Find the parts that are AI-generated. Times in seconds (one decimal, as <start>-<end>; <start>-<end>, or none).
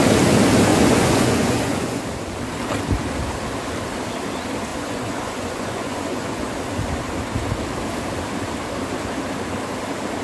0.7-2.0; 4.7-6.5